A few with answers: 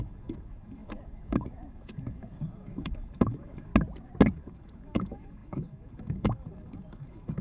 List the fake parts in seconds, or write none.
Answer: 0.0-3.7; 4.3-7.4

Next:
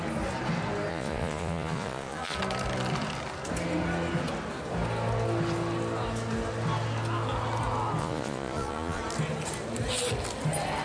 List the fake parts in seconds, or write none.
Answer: 0.9-2.4; 8.0-9.0

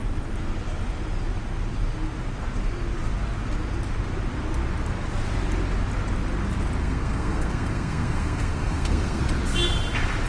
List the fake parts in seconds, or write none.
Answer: 6.8-9.2

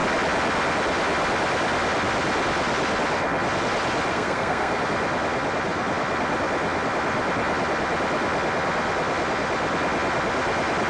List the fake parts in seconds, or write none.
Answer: 4.1-4.8

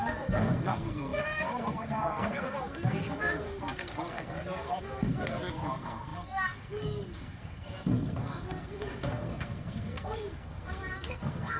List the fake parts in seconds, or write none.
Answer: 0.0-11.6